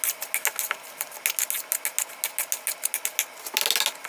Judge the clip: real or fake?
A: real